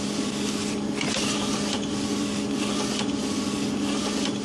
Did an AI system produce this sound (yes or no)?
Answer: no